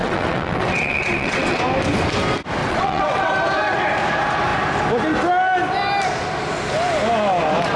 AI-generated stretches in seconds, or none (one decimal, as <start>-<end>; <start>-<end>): 0.0-1.6; 2.6-3.3